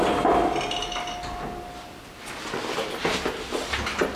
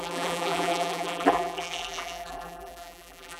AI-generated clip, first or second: second